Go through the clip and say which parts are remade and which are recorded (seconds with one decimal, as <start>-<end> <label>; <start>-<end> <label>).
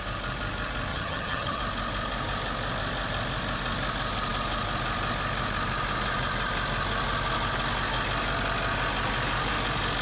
0.0-0.9 recorded; 0.9-1.6 remade; 1.6-10.0 recorded